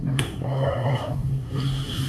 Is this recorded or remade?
remade